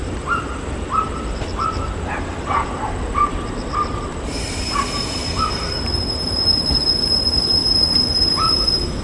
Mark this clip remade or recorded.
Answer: remade